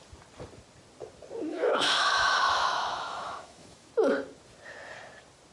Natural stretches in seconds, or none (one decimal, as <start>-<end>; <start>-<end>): 0.0-1.5; 3.9-5.5